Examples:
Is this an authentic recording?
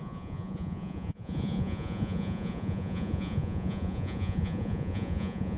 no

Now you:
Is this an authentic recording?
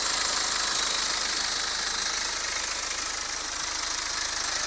yes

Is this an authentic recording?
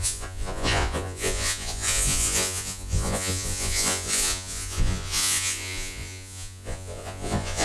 no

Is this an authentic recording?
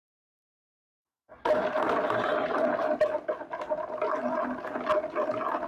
yes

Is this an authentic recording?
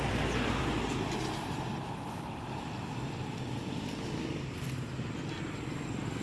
yes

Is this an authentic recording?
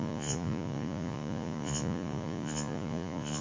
no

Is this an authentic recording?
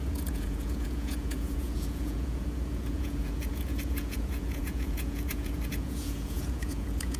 no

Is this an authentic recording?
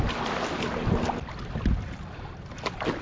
yes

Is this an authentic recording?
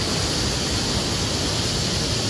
yes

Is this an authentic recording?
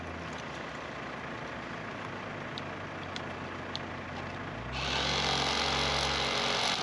yes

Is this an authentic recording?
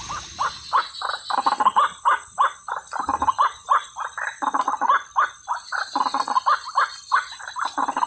yes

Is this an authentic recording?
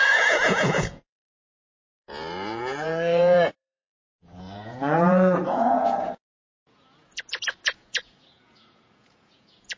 no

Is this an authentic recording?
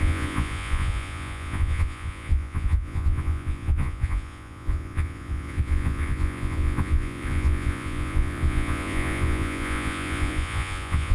no